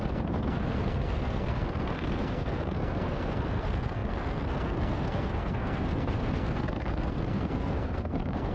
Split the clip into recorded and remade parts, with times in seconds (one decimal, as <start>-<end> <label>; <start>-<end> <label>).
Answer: 0.0-8.5 remade